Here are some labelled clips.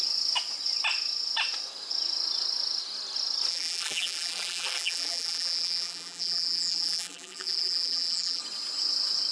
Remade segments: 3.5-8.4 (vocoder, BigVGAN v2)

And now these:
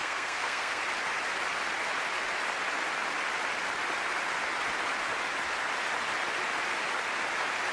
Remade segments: 0.0-0.8 (codec, SNAC)

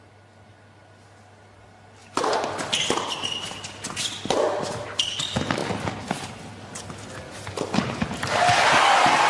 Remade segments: none

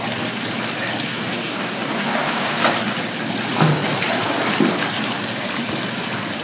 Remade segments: 1.1-2.6 (codec, DAC)

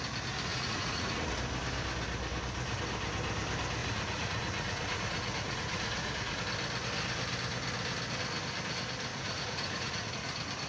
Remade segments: 0.5-1.3 (vocoder, Vocos); 3.8-6.4; 9.1-10.1